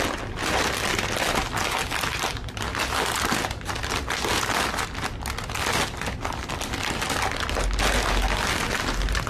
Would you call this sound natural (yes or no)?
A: yes